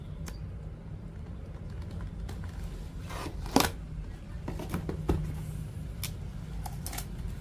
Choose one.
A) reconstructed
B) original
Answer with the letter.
B